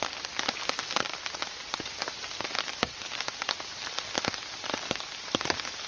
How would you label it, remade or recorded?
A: recorded